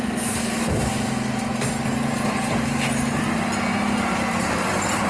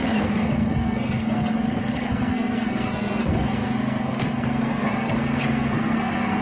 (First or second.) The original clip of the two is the first